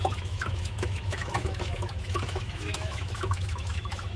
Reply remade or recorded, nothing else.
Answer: remade